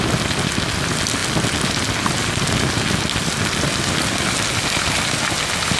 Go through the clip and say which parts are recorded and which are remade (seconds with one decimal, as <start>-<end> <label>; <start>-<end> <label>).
0.0-5.8 recorded